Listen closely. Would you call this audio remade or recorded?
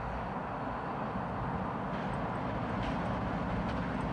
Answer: recorded